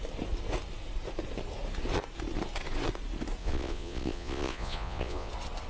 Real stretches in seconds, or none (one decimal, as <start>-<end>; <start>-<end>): 0.0-3.4; 5.3-5.7